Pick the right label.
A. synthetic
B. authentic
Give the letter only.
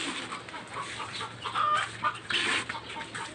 A